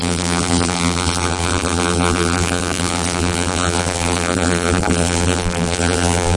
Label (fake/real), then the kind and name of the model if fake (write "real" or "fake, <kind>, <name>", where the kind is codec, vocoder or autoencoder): fake, vocoder, BigVGAN v2